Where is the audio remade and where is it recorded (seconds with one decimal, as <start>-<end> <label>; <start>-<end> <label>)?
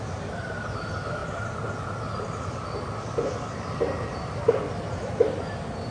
0.0-5.9 recorded